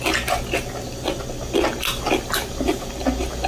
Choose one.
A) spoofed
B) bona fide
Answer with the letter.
B